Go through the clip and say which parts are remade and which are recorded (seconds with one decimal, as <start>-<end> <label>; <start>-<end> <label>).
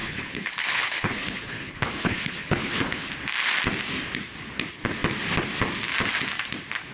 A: 0.0-3.1 remade; 3.1-6.9 recorded